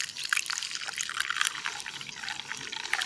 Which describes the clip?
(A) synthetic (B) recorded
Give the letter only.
B